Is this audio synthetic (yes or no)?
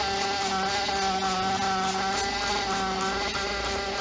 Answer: no